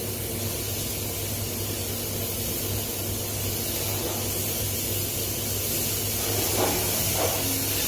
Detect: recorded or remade recorded